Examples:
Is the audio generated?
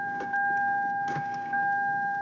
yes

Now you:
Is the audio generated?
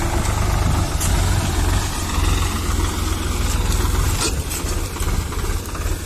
no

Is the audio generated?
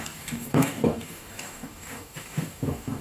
yes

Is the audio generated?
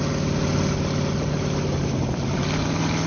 no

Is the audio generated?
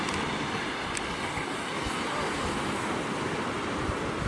no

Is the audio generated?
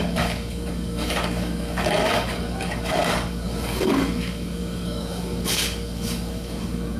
yes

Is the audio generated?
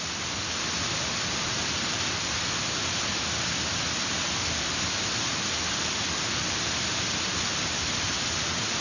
no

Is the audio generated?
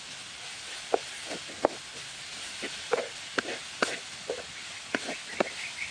no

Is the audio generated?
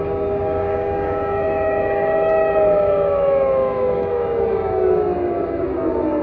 yes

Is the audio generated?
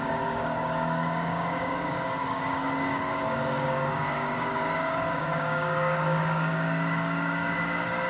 yes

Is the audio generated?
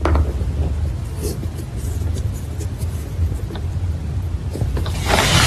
no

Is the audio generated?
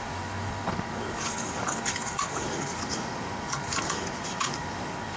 yes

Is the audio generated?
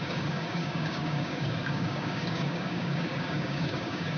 yes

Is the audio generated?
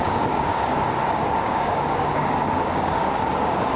yes